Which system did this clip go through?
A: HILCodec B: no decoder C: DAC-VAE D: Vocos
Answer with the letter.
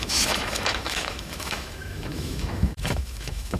C